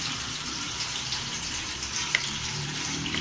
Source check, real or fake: fake